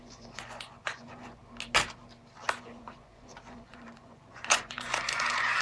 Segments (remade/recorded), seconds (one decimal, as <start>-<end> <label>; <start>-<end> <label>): 0.0-1.4 remade; 1.4-2.6 recorded; 2.6-5.6 remade